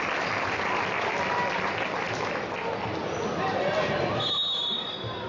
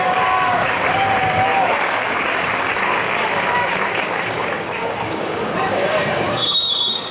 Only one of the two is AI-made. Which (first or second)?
second